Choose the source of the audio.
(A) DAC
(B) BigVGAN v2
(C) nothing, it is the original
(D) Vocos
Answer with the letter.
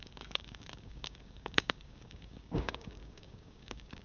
A